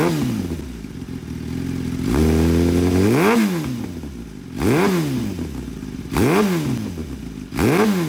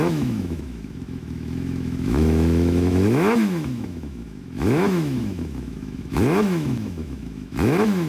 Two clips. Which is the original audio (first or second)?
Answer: first